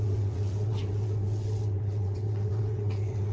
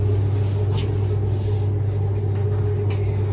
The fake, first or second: first